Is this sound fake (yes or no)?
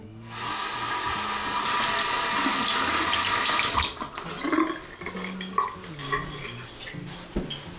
no